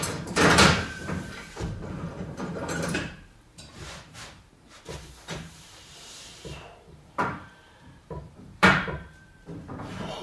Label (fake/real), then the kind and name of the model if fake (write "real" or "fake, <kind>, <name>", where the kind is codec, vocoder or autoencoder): fake, vocoder, BigVGAN v2